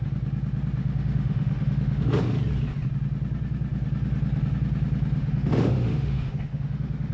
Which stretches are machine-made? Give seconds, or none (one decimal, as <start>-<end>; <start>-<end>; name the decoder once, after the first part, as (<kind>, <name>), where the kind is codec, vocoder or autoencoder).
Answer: 0.8-2.2 (autoencoder, DAC-VAE); 5.2-7.1